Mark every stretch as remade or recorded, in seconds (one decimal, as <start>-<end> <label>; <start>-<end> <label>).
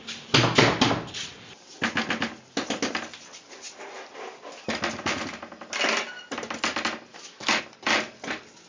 0.0-7.1 recorded; 7.1-7.6 remade; 7.6-8.7 recorded